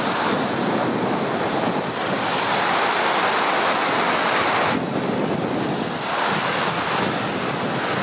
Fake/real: real